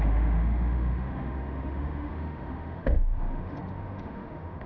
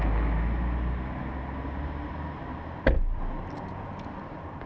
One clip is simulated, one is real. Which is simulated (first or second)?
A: first